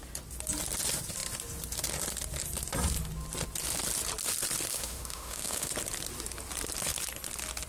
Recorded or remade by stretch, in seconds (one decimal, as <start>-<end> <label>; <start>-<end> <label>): 0.0-4.7 recorded; 4.7-5.7 remade; 5.7-7.7 recorded